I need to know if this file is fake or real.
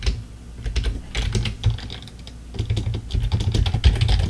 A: real